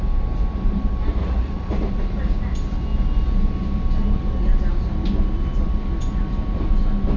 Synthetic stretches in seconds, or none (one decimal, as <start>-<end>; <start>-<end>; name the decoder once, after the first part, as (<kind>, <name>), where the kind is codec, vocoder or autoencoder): 1.2-1.7 (vocoder, Vocos)